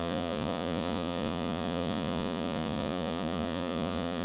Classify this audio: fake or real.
fake